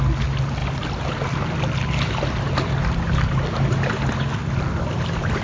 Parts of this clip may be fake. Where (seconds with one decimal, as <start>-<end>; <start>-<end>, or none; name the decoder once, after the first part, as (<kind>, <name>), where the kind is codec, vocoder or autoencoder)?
none